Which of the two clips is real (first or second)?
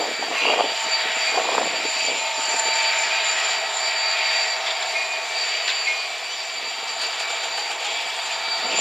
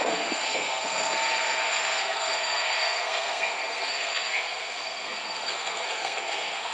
first